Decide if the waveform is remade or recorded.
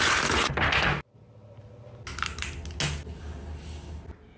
recorded